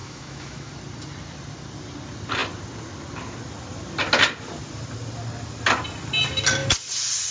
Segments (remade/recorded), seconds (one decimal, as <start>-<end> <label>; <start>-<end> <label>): 0.0-0.7 remade; 0.7-7.3 recorded